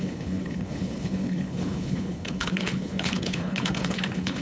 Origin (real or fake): fake